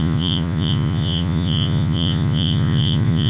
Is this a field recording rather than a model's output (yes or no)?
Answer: no